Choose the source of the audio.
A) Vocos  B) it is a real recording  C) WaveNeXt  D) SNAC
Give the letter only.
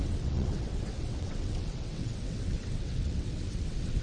C